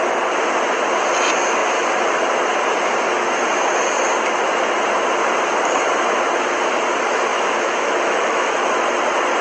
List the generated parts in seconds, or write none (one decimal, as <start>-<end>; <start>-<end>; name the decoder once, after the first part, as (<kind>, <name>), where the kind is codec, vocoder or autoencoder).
7.3-8.7 (autoencoder, DAC-VAE)